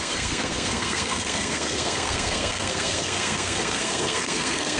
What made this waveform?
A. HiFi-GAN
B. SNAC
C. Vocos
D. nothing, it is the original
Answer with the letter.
B